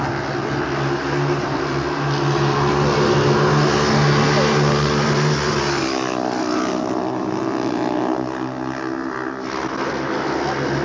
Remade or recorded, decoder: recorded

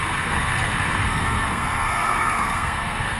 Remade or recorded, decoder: remade, codec, SNAC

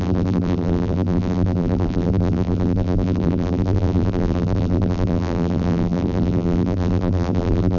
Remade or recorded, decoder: remade, vocoder, BigVGAN v2